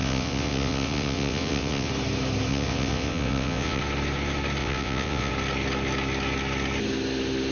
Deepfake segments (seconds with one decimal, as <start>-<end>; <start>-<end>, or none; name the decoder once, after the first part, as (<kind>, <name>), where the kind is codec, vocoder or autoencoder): 0.0-1.9 (vocoder, WaveNeXt); 2.5-3.8; 4.6-5.3